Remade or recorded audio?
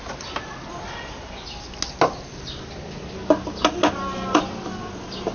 recorded